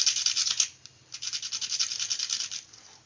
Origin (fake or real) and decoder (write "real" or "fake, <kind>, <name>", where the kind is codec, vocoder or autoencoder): real